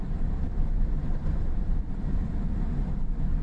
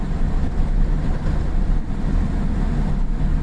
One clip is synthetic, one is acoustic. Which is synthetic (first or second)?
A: first